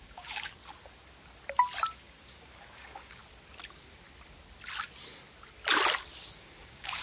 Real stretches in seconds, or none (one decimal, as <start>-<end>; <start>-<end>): 0.6-1.9; 3.2-6.4